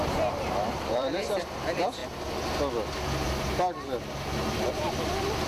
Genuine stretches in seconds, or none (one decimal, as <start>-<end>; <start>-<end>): 2.0-4.7